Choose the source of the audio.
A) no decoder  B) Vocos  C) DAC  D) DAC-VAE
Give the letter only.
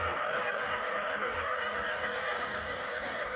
C